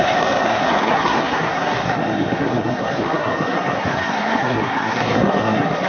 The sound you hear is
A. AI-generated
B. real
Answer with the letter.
A